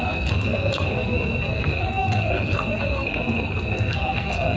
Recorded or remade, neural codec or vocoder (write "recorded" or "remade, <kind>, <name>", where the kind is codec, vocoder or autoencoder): remade, codec, SNAC